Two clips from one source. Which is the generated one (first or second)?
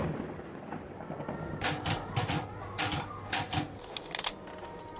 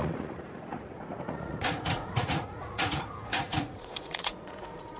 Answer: second